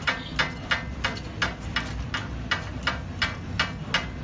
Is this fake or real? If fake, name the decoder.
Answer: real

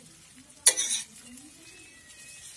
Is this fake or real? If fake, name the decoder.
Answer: real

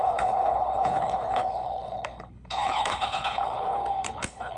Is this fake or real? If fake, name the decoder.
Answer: fake, codec, HILCodec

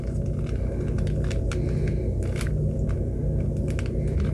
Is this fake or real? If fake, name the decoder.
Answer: real